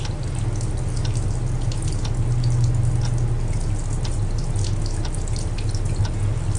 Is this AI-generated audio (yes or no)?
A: no